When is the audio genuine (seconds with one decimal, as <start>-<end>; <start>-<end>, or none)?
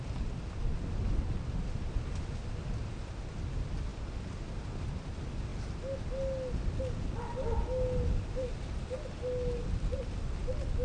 0.0-10.8